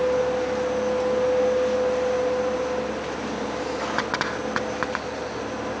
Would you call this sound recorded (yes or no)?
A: yes